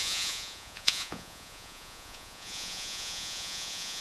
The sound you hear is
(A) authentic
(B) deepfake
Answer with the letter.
B